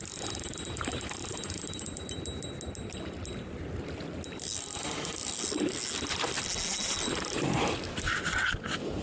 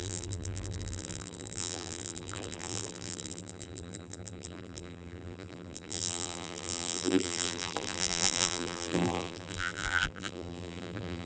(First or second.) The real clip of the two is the first